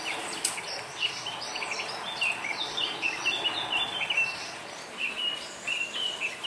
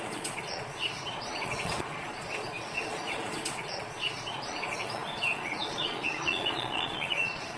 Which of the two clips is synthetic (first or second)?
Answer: second